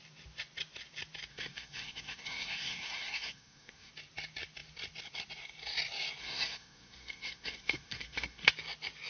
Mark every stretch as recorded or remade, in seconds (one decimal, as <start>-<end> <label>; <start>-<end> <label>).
0.0-1.3 recorded; 1.3-3.9 remade; 3.9-6.2 recorded; 6.2-8.5 remade; 8.5-9.1 recorded